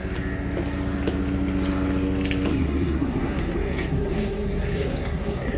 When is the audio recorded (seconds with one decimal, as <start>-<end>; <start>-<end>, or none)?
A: 0.0-2.5